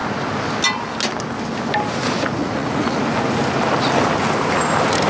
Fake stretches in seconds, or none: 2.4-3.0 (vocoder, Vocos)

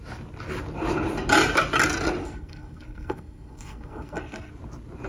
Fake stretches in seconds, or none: 2.2-4.5 (codec, SNAC)

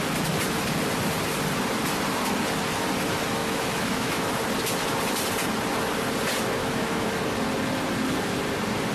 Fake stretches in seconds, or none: 3.4-4.3 (autoencoder, DAC-VAE); 6.6-7.1

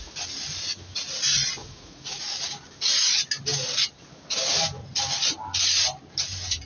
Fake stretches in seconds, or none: 1.6-2.2 (vocoder, Vocos)

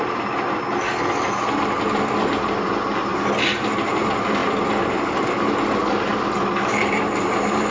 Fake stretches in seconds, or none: none

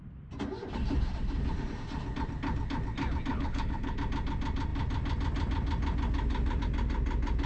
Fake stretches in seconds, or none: 3.3-4.0 (codec, HILCodec)